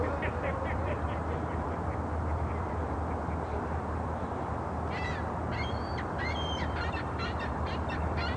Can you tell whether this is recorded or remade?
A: remade